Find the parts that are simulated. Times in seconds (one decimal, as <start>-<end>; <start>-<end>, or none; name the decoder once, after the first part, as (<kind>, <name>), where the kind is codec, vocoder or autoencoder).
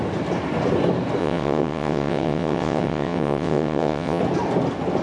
1.2-4.2 (vocoder, WaveNeXt)